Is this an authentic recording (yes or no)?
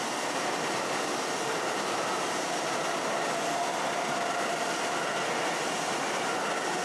yes